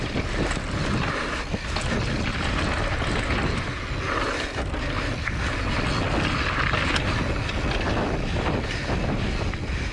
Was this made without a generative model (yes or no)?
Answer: yes